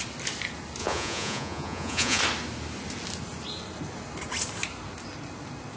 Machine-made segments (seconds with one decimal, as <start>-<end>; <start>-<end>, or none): 0.8-2.2